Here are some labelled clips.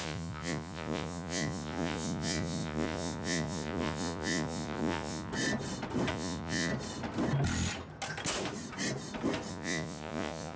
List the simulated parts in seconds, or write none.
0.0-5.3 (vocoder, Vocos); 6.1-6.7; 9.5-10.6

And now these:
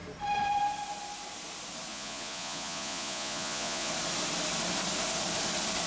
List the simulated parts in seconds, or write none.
1.9-3.9 (vocoder, Vocos)

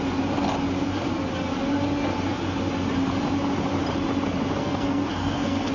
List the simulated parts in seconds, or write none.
4.6-5.7 (codec, SNAC)